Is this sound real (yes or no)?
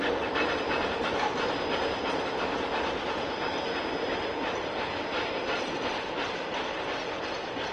yes